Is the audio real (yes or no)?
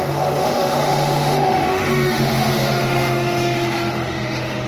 no